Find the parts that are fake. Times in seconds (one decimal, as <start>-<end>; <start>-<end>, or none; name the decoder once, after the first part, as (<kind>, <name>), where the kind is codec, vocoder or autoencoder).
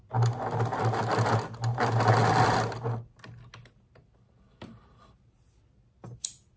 none